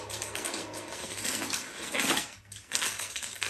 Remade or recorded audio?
remade